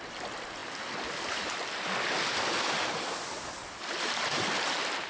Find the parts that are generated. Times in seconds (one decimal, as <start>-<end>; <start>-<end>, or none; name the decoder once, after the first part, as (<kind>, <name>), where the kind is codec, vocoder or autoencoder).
none